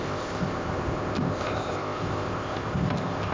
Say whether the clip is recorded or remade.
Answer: remade